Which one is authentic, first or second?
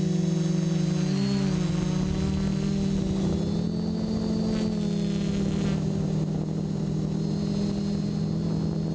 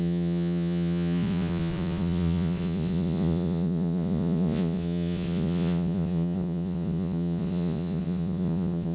first